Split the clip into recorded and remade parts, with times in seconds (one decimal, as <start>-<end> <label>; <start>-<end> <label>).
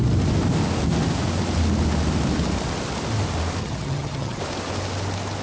0.0-3.6 recorded; 3.6-4.4 remade; 4.4-5.4 recorded